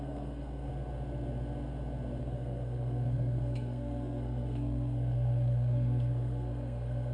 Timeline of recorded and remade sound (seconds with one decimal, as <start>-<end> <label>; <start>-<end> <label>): 0.0-0.7 remade; 0.7-2.2 recorded; 2.2-7.1 remade